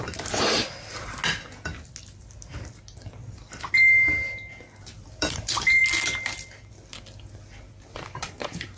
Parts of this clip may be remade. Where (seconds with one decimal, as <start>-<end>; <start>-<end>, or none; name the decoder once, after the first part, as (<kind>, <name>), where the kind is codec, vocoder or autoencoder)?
0.0-1.2 (vocoder, BigVGAN v2); 5.1-5.8; 7.9-8.8